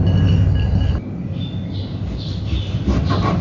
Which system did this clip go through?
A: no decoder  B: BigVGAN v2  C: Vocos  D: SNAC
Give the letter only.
A